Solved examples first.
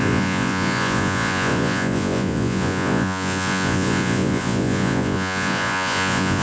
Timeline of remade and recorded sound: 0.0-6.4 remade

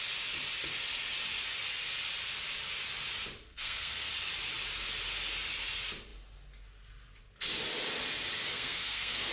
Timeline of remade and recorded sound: 0.0-3.5 recorded; 3.5-4.1 remade; 4.1-8.5 recorded; 8.5-9.3 remade

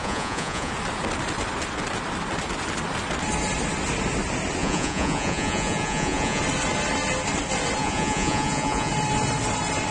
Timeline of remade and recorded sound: 0.0-0.7 remade; 0.7-4.6 recorded; 4.6-6.4 remade; 6.4-7.8 recorded; 7.8-8.9 remade; 8.9-9.9 recorded

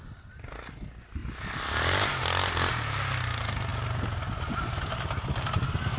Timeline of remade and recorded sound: 0.0-6.0 recorded

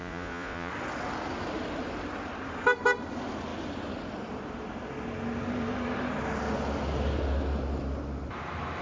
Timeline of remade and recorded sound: 0.0-0.7 remade; 0.7-8.8 recorded

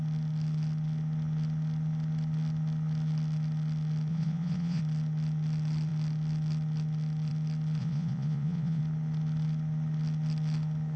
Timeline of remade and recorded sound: 0.0-4.1 recorded; 4.1-4.8 remade; 4.8-7.8 recorded; 7.8-8.8 remade; 8.8-11.0 recorded